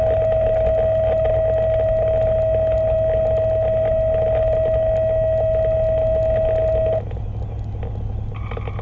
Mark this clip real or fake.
real